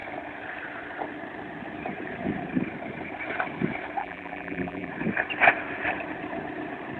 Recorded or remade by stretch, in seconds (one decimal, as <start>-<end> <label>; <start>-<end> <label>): 0.0-4.0 recorded; 4.0-4.9 remade; 4.9-7.0 recorded